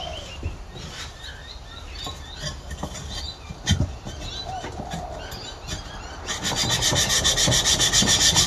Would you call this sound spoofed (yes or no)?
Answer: no